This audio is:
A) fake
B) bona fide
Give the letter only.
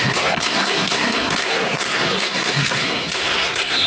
A